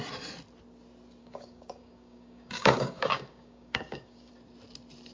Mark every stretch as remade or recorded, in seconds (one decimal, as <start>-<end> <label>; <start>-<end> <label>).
0.0-1.2 recorded; 1.2-4.3 remade; 4.3-5.1 recorded